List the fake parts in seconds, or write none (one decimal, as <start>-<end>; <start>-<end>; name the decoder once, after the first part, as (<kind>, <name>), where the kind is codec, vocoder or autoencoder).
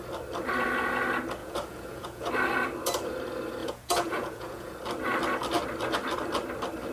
1.4-2.3 (vocoder, Vocos); 3.6-4.7